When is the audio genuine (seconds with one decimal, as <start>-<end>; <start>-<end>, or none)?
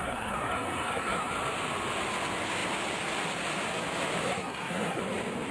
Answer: 1.3-4.2; 5.0-5.5